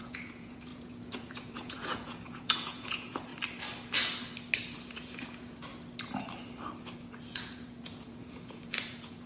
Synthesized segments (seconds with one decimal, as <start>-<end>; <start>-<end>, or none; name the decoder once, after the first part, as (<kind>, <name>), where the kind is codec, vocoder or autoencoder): 0.0-3.3 (vocoder, Vocos); 4.8-5.7; 7.3-9.3